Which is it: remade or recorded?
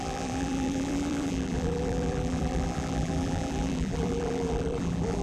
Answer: remade